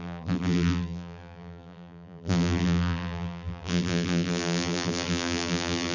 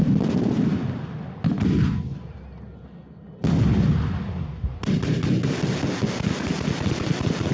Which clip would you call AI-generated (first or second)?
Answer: first